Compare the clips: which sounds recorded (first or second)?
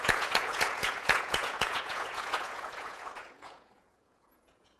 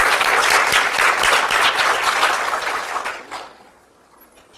second